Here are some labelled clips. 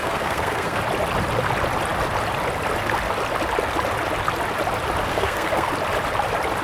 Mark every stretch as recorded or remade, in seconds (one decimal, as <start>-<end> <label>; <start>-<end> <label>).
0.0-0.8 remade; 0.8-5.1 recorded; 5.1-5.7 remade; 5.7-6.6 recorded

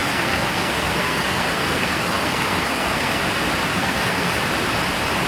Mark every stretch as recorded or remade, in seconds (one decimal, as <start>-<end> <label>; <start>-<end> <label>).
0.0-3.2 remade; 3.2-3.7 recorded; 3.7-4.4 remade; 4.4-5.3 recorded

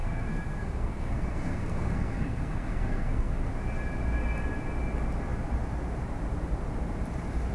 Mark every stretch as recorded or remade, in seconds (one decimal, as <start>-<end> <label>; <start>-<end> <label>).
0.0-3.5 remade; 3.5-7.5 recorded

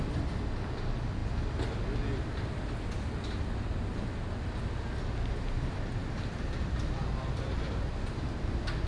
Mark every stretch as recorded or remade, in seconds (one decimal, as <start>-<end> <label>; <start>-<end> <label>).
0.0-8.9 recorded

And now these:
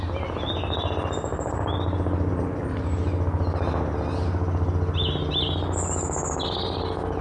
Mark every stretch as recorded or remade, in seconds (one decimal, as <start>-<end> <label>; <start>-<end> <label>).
0.0-7.2 recorded